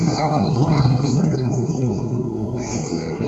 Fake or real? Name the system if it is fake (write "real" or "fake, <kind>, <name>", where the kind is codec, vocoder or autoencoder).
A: fake, codec, SNAC